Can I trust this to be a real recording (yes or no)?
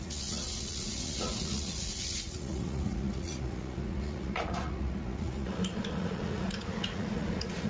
no